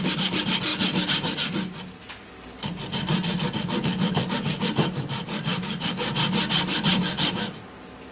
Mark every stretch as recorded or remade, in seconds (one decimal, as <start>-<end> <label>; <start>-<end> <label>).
0.0-8.1 recorded